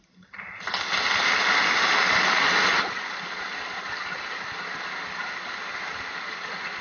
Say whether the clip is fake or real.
real